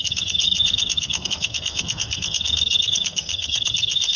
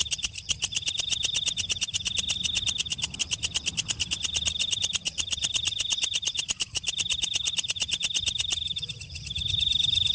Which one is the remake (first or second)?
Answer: first